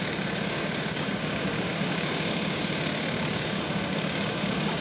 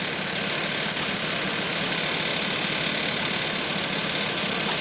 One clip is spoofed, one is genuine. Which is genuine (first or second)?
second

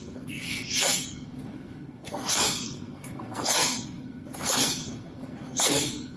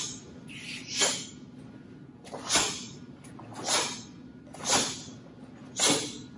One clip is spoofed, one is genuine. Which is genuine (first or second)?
second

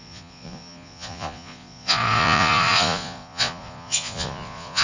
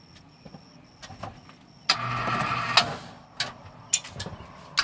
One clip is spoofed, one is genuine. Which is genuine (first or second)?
second